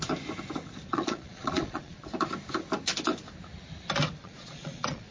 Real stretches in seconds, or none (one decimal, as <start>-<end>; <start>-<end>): 0.0-0.9; 2.0-4.2